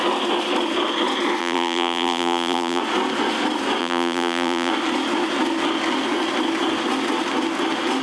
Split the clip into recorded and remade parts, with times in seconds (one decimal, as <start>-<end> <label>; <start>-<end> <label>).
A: 0.0-1.4 recorded; 1.4-2.8 remade; 2.8-3.8 recorded; 3.8-4.7 remade; 4.7-8.0 recorded